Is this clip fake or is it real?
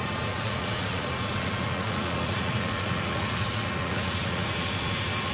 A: fake